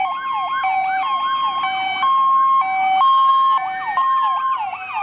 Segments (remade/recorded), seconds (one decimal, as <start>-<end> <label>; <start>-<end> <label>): 0.0-5.0 recorded